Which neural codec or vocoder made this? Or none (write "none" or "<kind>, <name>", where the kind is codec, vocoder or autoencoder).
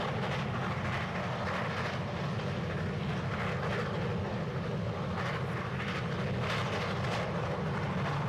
none